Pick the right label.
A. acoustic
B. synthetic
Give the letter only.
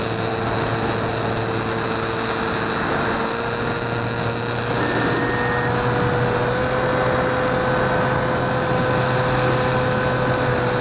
A